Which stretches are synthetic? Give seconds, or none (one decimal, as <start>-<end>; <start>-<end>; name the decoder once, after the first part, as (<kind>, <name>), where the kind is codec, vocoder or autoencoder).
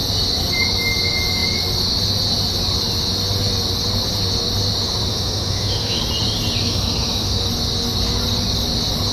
5.1-6.0 (autoencoder, DAC-VAE); 6.6-7.4